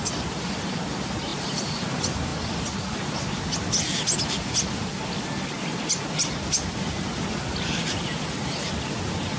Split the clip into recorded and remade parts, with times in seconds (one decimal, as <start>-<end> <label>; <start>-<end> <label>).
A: 0.0-1.3 recorded; 1.3-1.8 remade; 1.8-7.8 recorded; 7.8-8.7 remade; 8.7-9.4 recorded

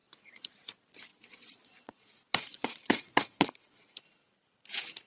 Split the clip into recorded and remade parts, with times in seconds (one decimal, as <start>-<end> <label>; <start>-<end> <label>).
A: 0.0-0.5 remade; 0.5-1.1 recorded; 1.1-4.0 remade; 4.0-5.1 recorded